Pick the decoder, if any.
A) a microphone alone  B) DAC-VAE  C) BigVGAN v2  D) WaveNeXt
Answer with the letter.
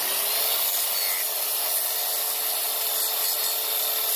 A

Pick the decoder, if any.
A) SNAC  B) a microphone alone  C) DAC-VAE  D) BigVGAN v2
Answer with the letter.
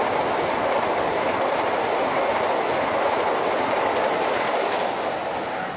D